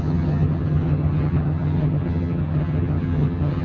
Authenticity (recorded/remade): remade